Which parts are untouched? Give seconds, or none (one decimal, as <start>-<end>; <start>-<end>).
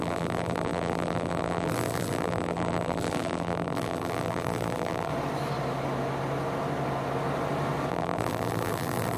5.1-7.9